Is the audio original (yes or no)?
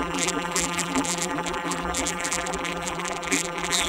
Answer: no